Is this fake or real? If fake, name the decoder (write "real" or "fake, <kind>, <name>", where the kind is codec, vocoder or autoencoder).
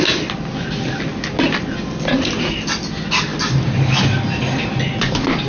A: real